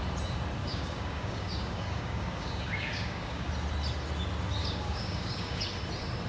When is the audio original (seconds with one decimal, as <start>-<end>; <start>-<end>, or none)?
0.0-0.6; 3.5-4.6; 5.6-6.3